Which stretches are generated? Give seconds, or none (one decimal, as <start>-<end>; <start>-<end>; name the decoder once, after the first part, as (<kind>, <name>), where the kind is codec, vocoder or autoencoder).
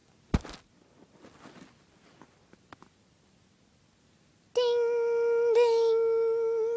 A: none